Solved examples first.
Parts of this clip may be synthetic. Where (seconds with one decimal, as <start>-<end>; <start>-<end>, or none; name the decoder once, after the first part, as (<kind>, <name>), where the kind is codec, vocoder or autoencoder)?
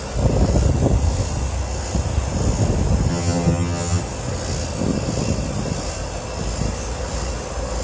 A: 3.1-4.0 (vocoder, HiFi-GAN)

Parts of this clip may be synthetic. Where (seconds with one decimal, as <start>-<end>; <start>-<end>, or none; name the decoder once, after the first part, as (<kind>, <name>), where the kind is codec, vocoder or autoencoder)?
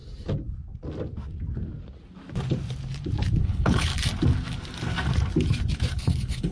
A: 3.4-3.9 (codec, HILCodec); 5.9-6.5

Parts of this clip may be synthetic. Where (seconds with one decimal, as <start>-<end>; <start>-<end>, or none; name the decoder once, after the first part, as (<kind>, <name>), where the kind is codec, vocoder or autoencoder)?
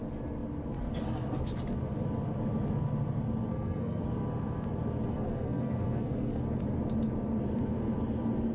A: 3.5-4.0 (codec, SNAC); 5.1-6.4